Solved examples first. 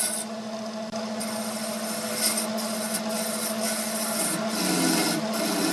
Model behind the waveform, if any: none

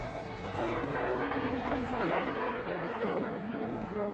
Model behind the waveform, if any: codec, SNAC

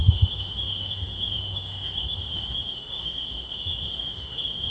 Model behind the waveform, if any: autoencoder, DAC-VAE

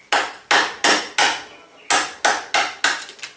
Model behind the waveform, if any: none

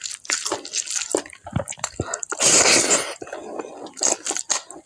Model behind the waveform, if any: none